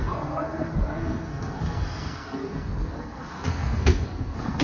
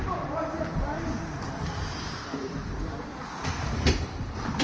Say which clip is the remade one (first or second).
first